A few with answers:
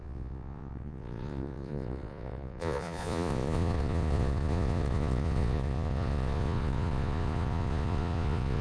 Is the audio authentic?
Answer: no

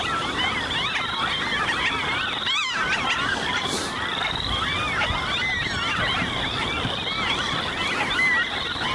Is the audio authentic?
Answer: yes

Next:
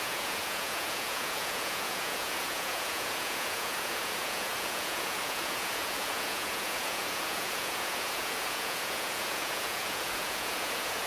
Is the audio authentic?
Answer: no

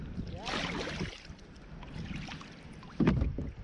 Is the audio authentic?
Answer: yes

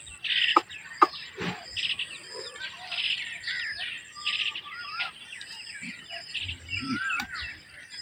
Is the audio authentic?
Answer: yes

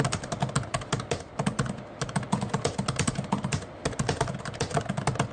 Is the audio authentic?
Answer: yes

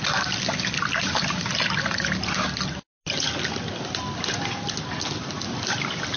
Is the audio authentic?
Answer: yes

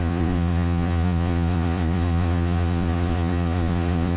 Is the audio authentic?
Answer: no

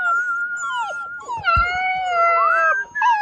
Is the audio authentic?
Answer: yes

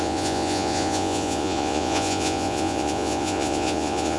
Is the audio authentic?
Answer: no